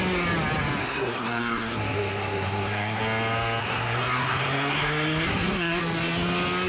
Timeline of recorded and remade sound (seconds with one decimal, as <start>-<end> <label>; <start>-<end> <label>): 0.0-0.8 recorded; 0.8-3.0 remade; 3.0-3.6 recorded; 3.6-5.8 remade; 5.8-6.7 recorded